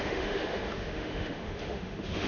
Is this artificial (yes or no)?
yes